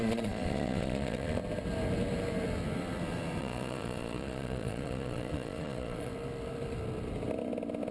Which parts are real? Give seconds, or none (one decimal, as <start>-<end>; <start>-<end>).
1.4-3.4; 6.1-7.9